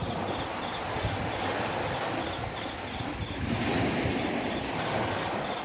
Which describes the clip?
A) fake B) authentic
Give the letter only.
B